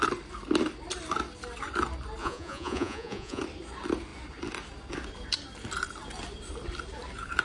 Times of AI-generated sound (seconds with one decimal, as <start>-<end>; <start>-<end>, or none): 2.2-3.4

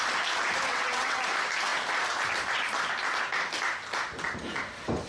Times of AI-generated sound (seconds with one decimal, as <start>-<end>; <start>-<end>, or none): 0.7-1.2

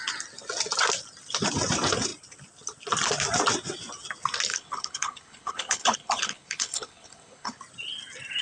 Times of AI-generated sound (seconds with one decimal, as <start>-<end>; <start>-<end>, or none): 4.5-7.6

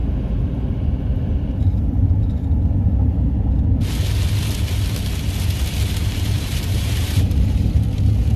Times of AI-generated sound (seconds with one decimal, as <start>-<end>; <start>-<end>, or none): 6.0-7.8

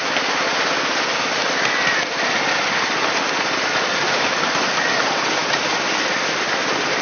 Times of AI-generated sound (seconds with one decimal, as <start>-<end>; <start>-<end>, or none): none